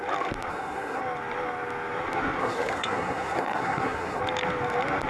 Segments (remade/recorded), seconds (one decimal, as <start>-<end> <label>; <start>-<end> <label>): 0.0-0.5 recorded; 0.5-1.0 remade; 1.0-2.4 recorded; 2.4-4.2 remade; 4.2-5.1 recorded